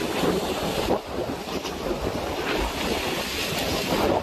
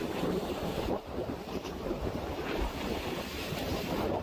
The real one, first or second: first